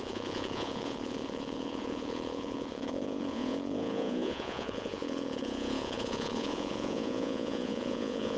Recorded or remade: remade